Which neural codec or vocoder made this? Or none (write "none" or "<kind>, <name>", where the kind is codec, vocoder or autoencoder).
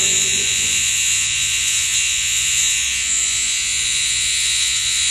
vocoder, Vocos